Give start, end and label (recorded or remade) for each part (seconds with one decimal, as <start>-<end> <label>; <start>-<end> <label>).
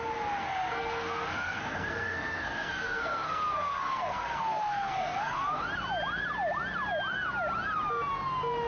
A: 0.0-0.4 recorded; 0.4-5.6 remade; 5.6-8.7 recorded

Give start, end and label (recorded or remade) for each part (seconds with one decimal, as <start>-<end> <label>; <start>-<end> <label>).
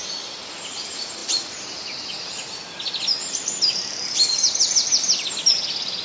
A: 0.0-6.0 recorded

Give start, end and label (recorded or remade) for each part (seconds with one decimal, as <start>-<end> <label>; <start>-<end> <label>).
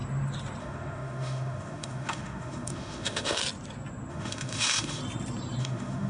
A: 0.0-0.6 recorded; 0.6-3.4 remade; 3.4-4.1 recorded; 4.1-5.0 remade; 5.0-5.6 recorded; 5.6-6.1 remade